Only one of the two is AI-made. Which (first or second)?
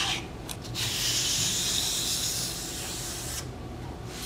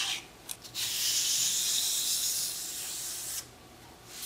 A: first